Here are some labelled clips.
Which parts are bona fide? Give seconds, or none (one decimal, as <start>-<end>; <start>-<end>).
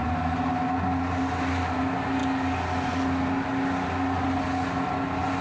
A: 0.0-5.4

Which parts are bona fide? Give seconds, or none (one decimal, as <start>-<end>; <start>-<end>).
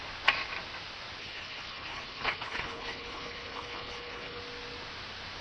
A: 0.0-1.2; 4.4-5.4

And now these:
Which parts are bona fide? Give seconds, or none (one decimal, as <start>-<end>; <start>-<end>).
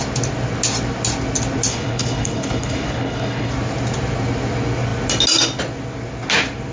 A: 0.0-1.7; 3.5-6.7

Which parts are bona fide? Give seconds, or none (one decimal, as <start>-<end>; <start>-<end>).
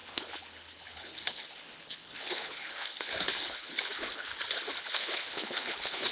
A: 4.3-4.8